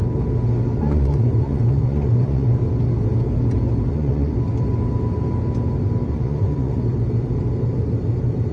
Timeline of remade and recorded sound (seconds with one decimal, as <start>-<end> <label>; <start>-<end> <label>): 0.0-0.8 recorded; 0.8-2.6 remade; 2.6-3.9 recorded; 3.9-4.3 remade; 4.3-6.1 recorded; 6.1-6.8 remade; 6.8-8.5 recorded